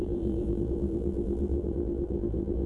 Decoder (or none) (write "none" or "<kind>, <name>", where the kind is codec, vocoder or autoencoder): vocoder, BigVGAN v2